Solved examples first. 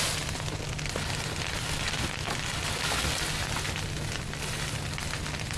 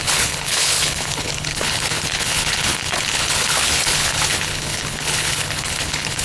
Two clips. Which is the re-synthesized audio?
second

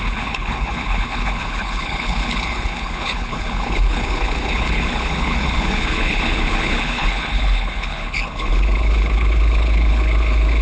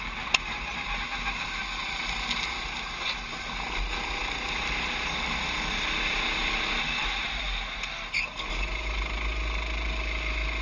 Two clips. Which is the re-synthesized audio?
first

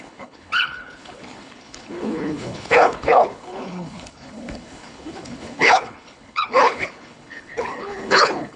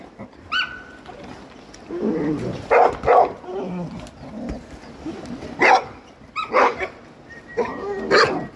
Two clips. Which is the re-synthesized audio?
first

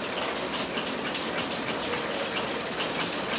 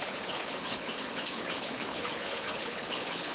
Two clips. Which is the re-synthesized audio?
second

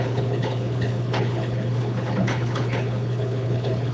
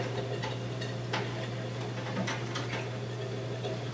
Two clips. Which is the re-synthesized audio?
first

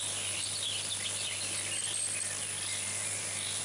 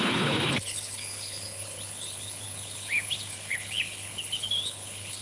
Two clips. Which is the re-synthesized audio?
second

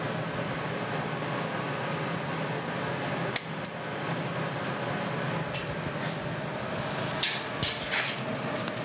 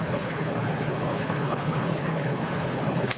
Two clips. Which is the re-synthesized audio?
second